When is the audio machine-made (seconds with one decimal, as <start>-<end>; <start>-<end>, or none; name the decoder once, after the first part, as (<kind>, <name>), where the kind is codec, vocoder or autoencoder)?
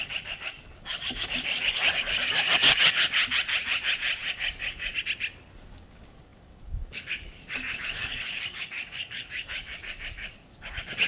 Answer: 0.0-3.2 (codec, DAC); 4.3-4.9; 5.6-11.1